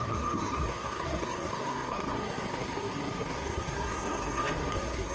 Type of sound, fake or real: fake